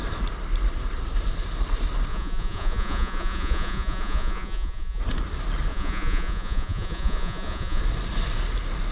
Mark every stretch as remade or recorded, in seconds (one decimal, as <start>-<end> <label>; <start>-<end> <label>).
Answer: 0.0-2.1 recorded; 2.1-5.0 remade; 5.0-5.7 recorded; 5.7-7.8 remade; 7.8-8.9 recorded